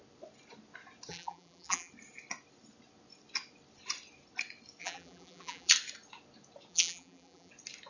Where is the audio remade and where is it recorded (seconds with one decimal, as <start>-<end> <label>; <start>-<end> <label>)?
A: 0.0-1.1 recorded; 1.1-1.9 remade; 1.9-4.8 recorded; 4.8-5.7 remade; 5.7-6.7 recorded; 6.7-7.5 remade; 7.5-7.9 recorded